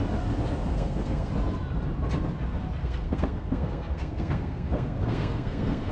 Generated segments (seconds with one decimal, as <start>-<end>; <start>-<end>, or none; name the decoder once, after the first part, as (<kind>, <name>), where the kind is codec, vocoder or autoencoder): 0.7-1.3 (codec, SNAC); 2.8-5.9